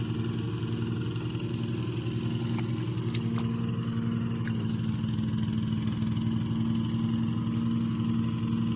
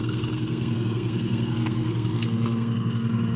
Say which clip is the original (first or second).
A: first